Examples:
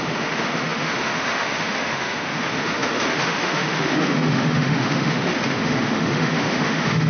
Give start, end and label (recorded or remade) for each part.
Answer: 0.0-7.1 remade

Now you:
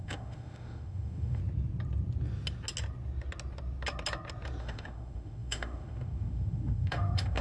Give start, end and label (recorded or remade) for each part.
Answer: 0.0-1.4 remade; 1.4-4.6 recorded; 4.6-7.4 remade

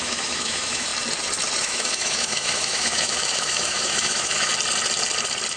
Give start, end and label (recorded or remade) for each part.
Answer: 0.0-0.9 remade; 0.9-1.6 recorded; 1.6-4.5 remade; 4.5-5.6 recorded

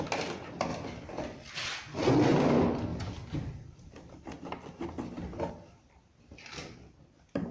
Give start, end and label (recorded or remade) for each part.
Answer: 0.0-7.5 recorded

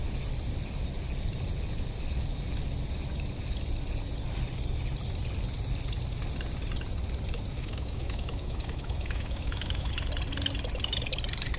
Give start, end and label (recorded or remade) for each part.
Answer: 0.0-7.6 recorded; 7.6-9.9 remade; 9.9-11.6 recorded

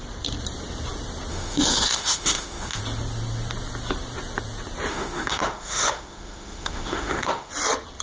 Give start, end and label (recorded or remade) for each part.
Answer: 0.0-1.3 recorded; 1.3-2.8 remade; 2.8-4.9 recorded; 4.9-7.5 remade; 7.5-8.0 recorded